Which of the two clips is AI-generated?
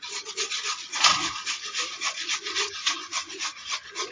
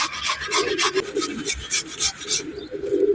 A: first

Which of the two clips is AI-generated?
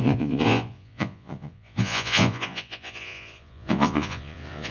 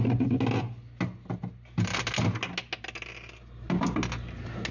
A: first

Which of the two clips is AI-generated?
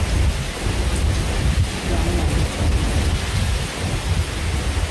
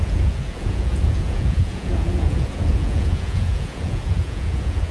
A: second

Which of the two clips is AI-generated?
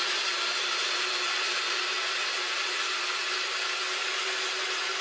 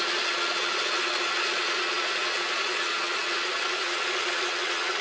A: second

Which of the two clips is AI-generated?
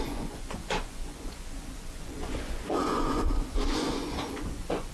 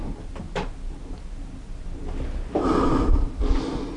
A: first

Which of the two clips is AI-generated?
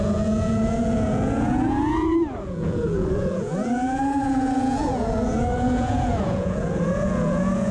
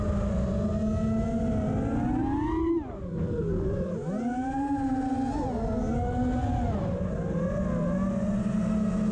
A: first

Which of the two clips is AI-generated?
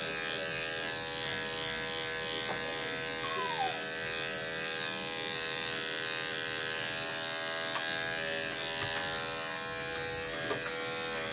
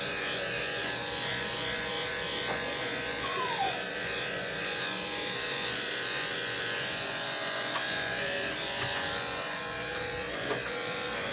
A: second